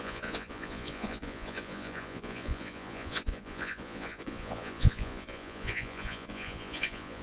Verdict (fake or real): fake